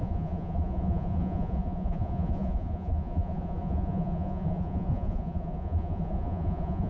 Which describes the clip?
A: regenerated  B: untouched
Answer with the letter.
A